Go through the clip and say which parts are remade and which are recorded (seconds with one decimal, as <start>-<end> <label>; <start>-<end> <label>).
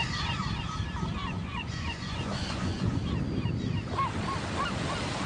0.0-1.2 recorded; 1.2-3.0 remade; 3.0-5.3 recorded